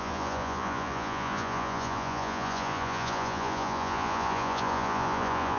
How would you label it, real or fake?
fake